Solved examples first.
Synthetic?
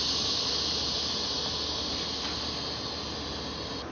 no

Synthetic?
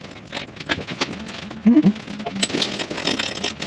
no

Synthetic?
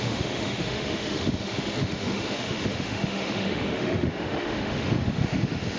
yes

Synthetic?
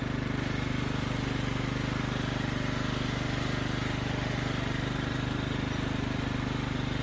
no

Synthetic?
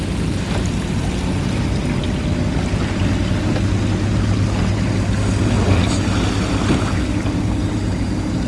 no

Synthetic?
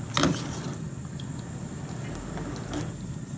no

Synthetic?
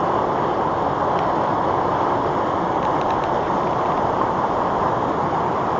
no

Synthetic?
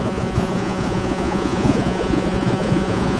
yes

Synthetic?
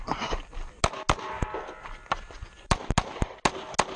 no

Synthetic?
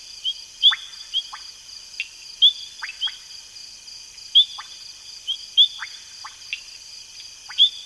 no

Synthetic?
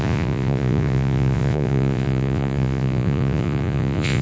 yes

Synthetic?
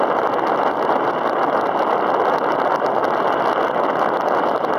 no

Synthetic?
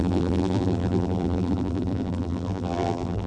yes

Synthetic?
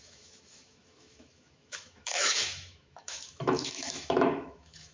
yes